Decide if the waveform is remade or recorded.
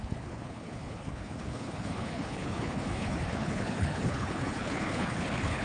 remade